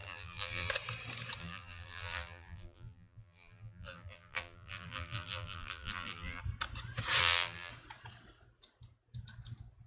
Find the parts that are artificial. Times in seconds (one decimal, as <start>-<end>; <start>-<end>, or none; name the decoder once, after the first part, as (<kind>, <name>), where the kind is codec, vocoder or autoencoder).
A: 0.0-0.7 (vocoder, BigVGAN v2); 1.4-6.4; 7.2-7.7